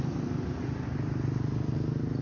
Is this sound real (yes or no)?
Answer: yes